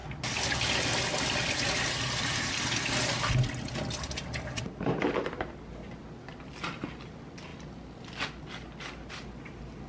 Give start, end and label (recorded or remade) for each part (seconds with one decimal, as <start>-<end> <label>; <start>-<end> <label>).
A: 0.0-9.9 recorded